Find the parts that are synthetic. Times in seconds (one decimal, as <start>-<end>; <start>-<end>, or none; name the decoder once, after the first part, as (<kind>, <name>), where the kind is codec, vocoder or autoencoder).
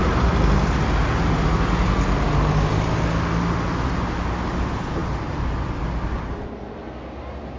none